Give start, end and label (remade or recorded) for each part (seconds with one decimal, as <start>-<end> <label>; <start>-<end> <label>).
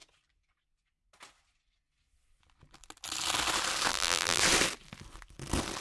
0.0-3.9 recorded; 3.9-4.4 remade; 4.4-5.8 recorded